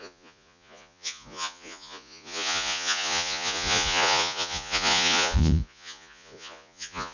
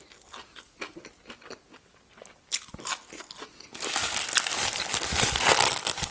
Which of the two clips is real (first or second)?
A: second